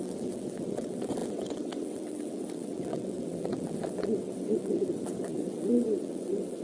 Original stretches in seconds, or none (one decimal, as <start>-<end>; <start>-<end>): none